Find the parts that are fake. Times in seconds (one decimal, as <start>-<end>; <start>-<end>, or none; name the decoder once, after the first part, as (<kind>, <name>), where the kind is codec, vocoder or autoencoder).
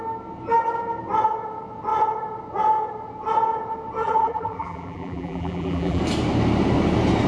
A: 4.0-6.0 (vocoder, BigVGAN v2)